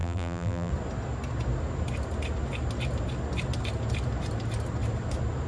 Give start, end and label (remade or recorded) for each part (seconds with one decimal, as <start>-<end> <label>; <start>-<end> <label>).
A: 0.0-0.7 remade; 0.7-5.5 recorded